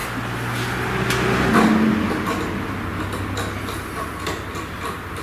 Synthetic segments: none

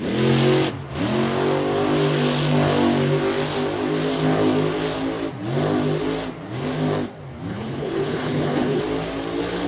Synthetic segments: 7.5-8.8 (codec, HILCodec)

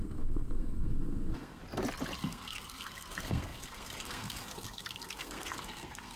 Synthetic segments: 0.0-1.6 (codec, SNAC); 2.2-6.2

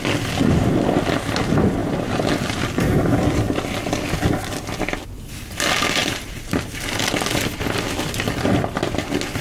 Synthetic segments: 1.8-3.5 (vocoder, BigVGAN v2); 6.0-6.8

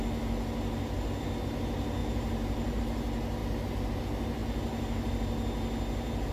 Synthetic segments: 2.0-2.8 (vocoder, BigVGAN v2)